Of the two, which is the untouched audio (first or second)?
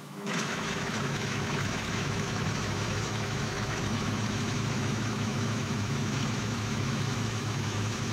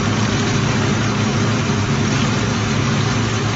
second